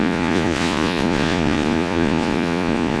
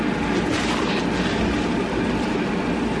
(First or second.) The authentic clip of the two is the second